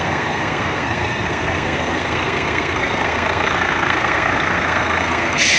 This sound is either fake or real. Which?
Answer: fake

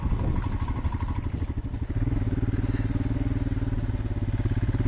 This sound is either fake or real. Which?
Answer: real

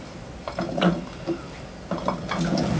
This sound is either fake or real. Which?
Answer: real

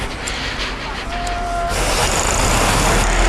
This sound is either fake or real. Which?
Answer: real